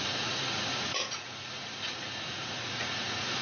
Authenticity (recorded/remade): remade